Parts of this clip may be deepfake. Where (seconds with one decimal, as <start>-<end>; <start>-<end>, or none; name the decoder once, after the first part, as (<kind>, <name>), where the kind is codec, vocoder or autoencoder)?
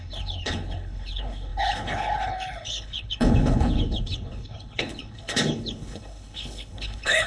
0.0-7.3 (codec, HILCodec)